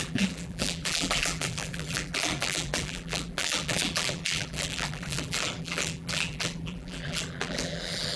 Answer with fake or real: fake